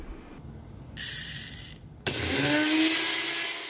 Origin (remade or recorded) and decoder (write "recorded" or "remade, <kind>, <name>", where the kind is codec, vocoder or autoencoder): recorded